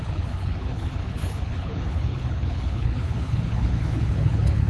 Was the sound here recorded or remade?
remade